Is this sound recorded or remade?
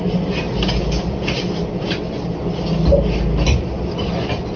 recorded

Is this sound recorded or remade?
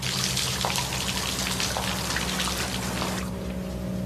recorded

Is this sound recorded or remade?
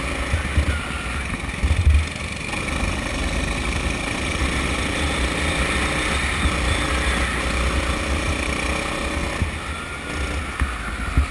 recorded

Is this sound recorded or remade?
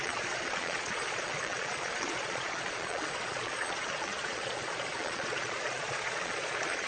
remade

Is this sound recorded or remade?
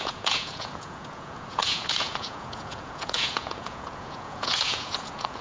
remade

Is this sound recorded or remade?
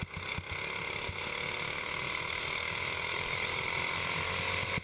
recorded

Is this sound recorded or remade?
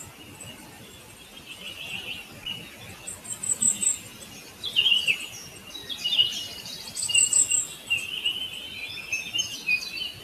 recorded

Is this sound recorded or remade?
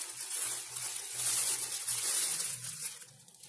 remade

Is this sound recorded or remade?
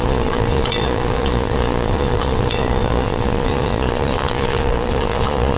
remade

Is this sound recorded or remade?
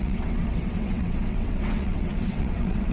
remade